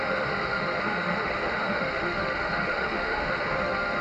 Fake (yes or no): yes